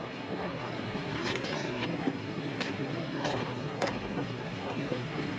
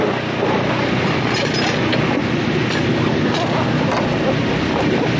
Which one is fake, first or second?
first